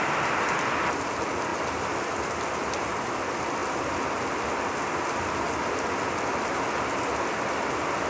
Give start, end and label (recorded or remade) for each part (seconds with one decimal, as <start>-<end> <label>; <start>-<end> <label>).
0.0-8.1 recorded